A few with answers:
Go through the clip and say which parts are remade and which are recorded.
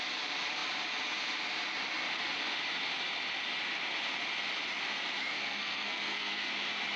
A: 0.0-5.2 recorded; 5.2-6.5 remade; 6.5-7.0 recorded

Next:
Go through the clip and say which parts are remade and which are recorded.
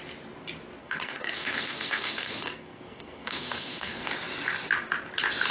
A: 0.0-0.8 recorded; 0.8-4.1 remade; 4.1-5.5 recorded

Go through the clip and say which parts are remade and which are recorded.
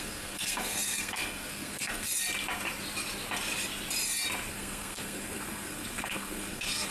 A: 0.0-2.1 remade; 2.1-4.5 recorded; 4.5-6.9 remade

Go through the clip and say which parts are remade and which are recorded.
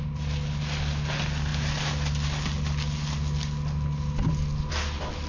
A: 0.0-5.3 recorded